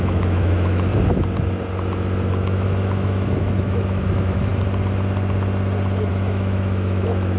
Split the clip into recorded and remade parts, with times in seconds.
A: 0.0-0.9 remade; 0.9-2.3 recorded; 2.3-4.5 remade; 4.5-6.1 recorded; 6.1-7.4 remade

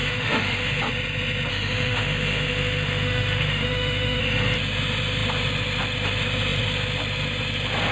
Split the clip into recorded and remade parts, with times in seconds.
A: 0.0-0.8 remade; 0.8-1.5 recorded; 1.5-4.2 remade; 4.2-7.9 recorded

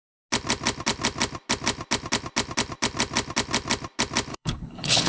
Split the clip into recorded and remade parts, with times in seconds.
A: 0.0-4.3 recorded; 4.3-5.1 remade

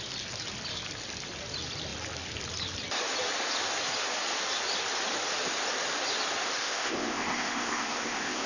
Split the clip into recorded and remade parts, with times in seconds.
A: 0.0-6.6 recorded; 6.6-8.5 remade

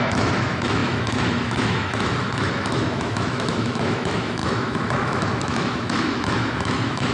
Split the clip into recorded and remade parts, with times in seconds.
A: 0.0-7.1 remade

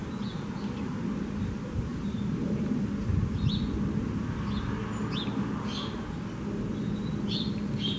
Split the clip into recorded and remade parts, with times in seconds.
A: 0.0-1.9 recorded; 1.9-2.6 remade; 2.6-8.0 recorded

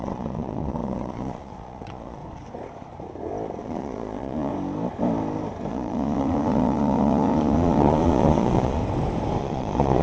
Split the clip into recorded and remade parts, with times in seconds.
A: 0.0-2.2 remade; 2.2-3.6 recorded; 3.6-4.5 remade; 4.5-5.7 recorded; 5.7-8.8 remade; 8.8-9.4 recorded; 9.4-10.0 remade